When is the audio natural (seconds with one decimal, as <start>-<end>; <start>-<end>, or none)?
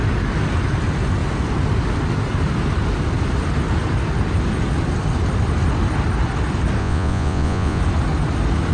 0.0-6.8; 7.8-8.7